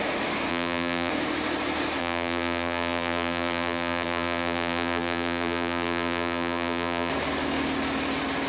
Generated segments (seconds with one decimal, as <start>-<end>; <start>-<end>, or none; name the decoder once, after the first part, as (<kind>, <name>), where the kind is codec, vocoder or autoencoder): 0.5-1.1 (vocoder, BigVGAN v2); 2.0-7.1